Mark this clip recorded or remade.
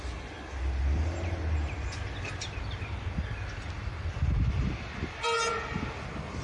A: recorded